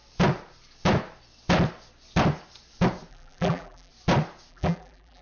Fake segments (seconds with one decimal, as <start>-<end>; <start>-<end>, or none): 3.1-3.9; 4.5-5.2